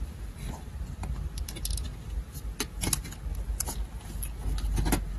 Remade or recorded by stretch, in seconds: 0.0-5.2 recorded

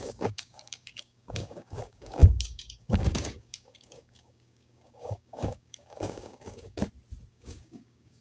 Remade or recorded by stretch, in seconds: 0.0-6.8 remade; 6.8-7.3 recorded; 7.3-8.2 remade

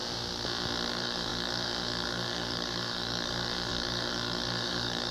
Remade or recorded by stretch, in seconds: 0.0-0.9 recorded; 0.9-5.1 remade

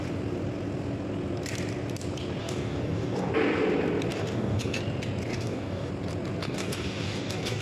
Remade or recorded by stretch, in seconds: 0.0-2.4 recorded; 2.4-3.3 remade; 3.3-4.1 recorded; 4.1-4.8 remade; 4.8-5.3 recorded; 5.3-5.9 remade; 5.9-6.4 recorded; 6.4-7.6 remade

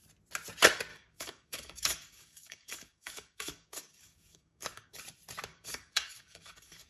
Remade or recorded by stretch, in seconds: 0.0-0.9 recorded; 0.9-5.0 remade; 5.0-5.5 recorded; 5.5-6.9 remade